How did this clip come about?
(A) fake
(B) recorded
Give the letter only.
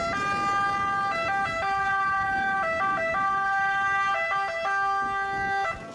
B